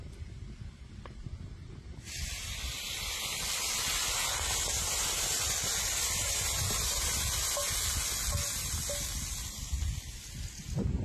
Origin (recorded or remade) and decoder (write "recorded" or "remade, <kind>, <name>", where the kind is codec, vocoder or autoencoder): recorded